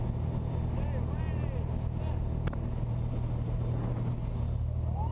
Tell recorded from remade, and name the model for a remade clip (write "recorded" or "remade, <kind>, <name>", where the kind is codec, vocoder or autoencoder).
recorded